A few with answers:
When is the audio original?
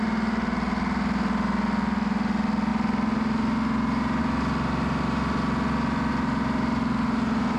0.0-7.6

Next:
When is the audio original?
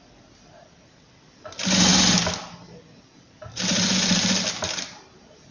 0.0-5.5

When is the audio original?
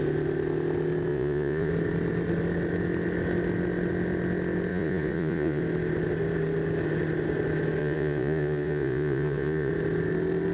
0.0-1.1; 1.7-4.7; 5.6-7.8; 9.7-10.5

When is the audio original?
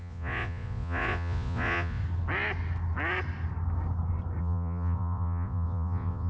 2.0-4.4